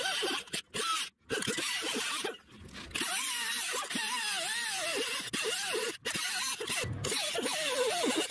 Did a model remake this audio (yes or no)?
no